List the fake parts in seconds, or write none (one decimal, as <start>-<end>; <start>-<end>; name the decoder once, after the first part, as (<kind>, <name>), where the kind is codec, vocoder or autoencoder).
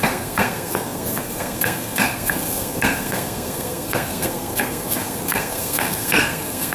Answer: 0.0-6.7 (codec, SNAC)